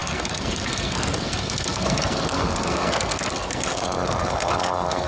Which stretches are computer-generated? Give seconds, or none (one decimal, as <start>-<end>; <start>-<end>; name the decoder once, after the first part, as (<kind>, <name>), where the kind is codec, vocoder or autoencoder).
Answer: 0.0-5.1 (codec, SNAC)